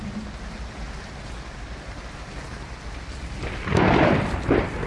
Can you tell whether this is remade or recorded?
recorded